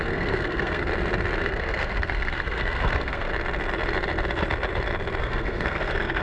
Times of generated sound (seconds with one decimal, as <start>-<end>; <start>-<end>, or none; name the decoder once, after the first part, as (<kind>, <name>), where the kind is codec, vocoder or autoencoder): 0.0-0.9 (codec, SNAC); 1.4-3.3; 5.2-6.2